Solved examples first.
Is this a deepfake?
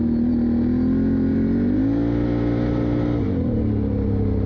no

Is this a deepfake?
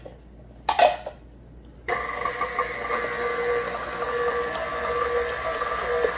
no